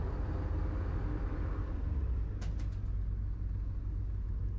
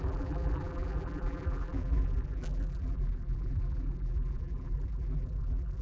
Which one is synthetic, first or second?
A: second